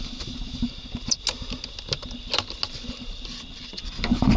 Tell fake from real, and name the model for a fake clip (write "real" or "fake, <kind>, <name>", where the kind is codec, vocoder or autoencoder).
real